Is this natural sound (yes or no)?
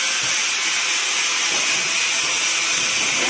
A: yes